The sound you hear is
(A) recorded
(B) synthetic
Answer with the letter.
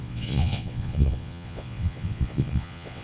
B